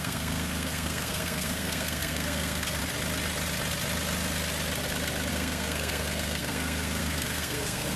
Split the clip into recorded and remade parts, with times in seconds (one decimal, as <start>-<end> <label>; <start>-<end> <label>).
0.0-2.8 remade; 2.8-5.3 recorded; 5.3-8.0 remade